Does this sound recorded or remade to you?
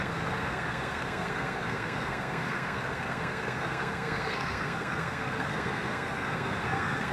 remade